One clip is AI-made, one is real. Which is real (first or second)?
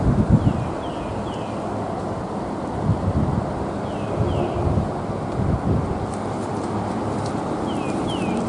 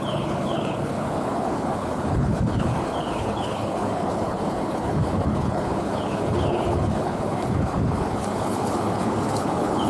first